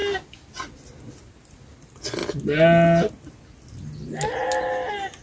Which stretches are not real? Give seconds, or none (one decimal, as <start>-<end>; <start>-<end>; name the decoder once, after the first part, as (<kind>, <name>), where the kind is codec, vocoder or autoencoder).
none